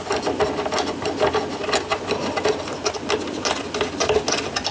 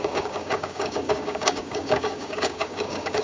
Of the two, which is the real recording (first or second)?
first